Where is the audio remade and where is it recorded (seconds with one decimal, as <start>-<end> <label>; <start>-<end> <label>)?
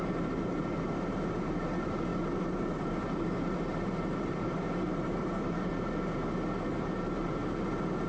0.0-5.7 remade; 5.7-6.7 recorded; 6.7-7.4 remade; 7.4-8.1 recorded